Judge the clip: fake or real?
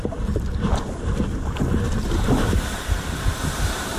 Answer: real